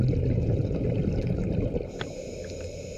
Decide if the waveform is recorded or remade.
recorded